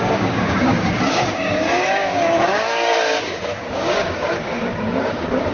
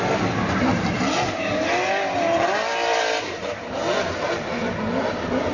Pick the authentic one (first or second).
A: second